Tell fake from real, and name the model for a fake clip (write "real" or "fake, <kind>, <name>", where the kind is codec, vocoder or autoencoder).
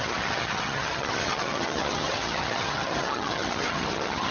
fake, vocoder, HiFi-GAN